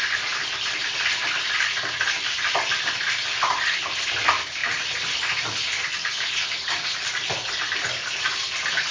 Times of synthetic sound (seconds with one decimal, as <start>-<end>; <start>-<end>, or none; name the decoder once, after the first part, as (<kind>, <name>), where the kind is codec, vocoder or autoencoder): none